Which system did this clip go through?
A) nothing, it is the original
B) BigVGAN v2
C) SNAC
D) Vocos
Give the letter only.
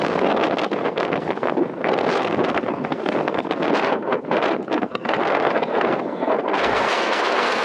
C